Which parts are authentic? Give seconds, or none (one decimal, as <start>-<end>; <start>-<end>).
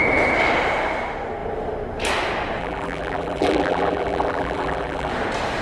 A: 0.0-2.6; 5.1-5.6